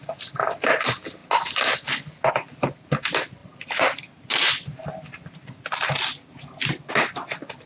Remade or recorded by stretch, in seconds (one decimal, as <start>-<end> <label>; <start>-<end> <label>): 0.0-7.7 recorded